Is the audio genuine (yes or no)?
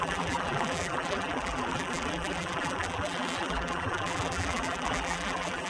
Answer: no